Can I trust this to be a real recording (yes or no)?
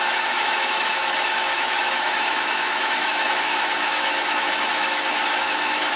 no